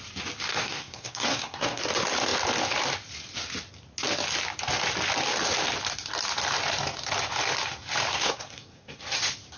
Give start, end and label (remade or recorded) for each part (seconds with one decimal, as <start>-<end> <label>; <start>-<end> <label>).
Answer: 0.0-0.5 recorded; 0.5-1.8 remade; 1.8-8.1 recorded; 8.1-9.0 remade; 9.0-9.6 recorded